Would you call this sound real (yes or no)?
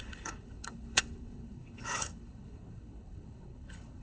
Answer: no